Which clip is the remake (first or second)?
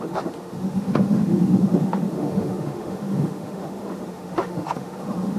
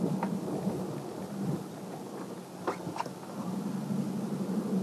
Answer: first